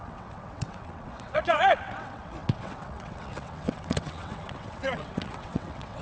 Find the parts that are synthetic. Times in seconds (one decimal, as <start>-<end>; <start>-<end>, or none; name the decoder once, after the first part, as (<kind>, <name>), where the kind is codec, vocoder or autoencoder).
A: 0.0-6.0 (vocoder, WaveNeXt)